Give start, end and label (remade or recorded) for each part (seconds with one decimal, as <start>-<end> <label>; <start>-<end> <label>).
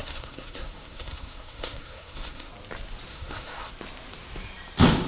0.0-2.5 remade; 2.5-3.1 recorded; 3.1-3.7 remade; 3.7-5.1 recorded